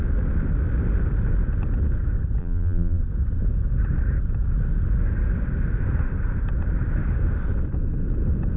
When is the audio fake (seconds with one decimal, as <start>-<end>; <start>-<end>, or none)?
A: 2.4-3.0